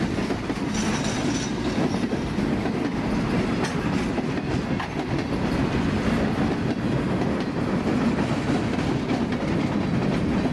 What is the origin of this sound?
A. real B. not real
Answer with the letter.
A